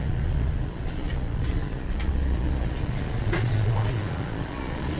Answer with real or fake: fake